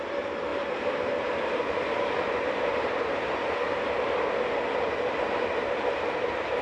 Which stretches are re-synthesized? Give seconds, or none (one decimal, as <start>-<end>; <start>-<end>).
0.5-4.5